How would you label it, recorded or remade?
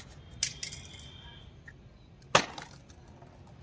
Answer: recorded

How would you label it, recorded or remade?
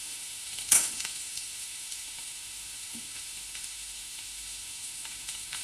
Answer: remade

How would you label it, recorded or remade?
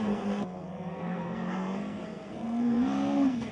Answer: remade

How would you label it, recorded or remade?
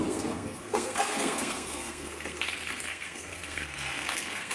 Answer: remade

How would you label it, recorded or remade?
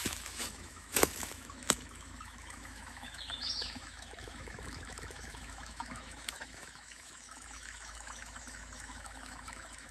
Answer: remade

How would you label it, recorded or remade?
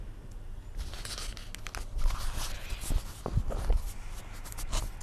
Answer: recorded